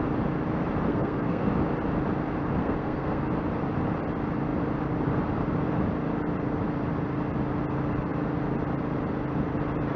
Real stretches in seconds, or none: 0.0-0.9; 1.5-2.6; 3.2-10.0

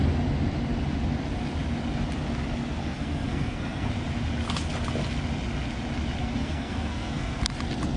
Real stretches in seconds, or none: 0.0-2.8; 3.9-6.2; 7.4-8.0

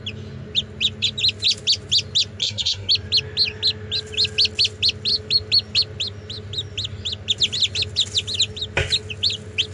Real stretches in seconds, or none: 0.0-2.4; 2.9-9.7